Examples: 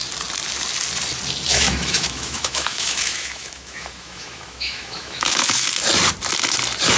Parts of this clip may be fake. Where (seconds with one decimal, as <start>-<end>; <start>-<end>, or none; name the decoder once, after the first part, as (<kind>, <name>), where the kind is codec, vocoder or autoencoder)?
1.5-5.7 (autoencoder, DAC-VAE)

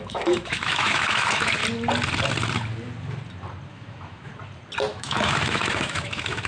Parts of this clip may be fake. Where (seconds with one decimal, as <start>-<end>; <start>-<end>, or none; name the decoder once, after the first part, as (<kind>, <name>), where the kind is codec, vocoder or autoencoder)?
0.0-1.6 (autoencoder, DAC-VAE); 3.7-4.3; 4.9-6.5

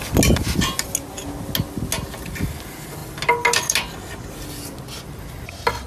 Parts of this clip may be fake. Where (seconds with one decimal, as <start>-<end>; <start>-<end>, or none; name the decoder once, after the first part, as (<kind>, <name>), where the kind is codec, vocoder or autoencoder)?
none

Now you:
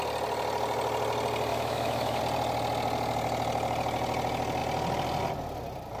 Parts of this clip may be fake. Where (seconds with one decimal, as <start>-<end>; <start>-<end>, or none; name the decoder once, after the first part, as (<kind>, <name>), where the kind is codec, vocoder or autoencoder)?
1.5-2.2 (autoencoder, DAC-VAE)

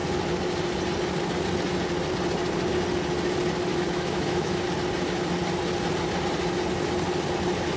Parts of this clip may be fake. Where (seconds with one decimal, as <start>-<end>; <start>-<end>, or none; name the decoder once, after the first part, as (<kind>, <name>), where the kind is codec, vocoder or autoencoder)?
3.7-4.6 (autoencoder, DAC-VAE)

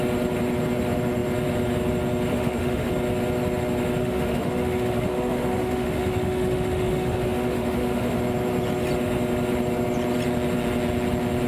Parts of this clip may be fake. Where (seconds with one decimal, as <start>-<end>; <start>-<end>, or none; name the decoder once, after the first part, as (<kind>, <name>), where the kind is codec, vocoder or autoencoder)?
2.3-2.9 (autoencoder, DAC-VAE); 4.0-8.2

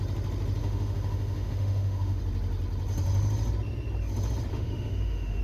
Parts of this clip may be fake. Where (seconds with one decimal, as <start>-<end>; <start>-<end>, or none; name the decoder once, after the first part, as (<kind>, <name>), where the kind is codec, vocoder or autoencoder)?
0.6-2.2 (autoencoder, DAC-VAE); 4.5-5.4